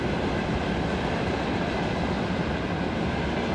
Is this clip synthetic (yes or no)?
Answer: no